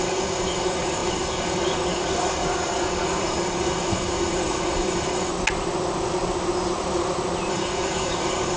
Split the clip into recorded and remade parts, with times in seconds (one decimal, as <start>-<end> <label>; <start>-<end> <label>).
0.0-5.3 remade; 5.3-7.5 recorded; 7.5-8.6 remade